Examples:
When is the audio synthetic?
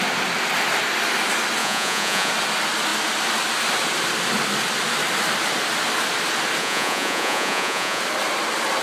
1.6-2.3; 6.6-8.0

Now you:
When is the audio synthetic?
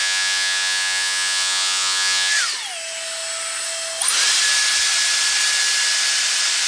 0.0-2.3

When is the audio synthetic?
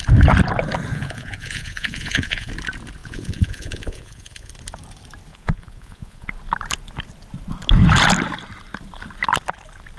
0.9-2.5; 3.0-4.5; 5.3-6.3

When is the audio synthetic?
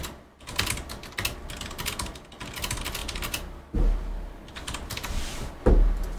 none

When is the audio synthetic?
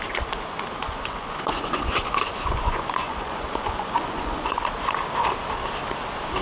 0.8-4.6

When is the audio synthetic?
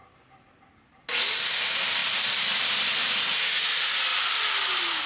none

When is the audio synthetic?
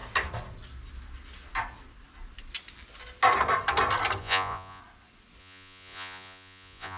4.2-4.8; 5.4-7.0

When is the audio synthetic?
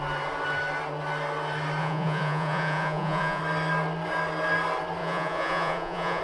1.8-3.4; 5.0-6.2